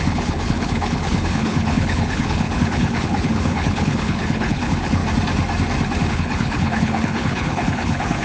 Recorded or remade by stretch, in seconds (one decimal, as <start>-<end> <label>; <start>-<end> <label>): 0.0-5.0 remade; 5.0-6.1 recorded; 6.1-8.2 remade